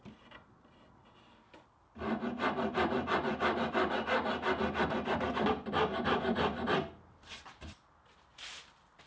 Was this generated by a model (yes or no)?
no